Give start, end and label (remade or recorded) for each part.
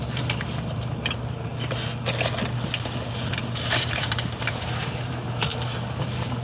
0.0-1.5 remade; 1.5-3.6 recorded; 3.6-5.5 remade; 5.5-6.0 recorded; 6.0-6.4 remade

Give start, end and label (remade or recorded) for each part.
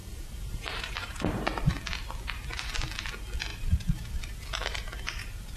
0.0-1.7 remade; 1.7-3.5 recorded; 3.5-5.6 remade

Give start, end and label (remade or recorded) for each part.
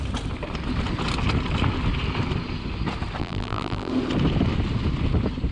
0.0-3.2 recorded; 3.2-3.9 remade; 3.9-5.5 recorded